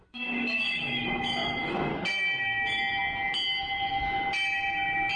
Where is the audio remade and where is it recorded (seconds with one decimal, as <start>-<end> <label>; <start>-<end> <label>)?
0.0-1.9 remade; 1.9-5.2 recorded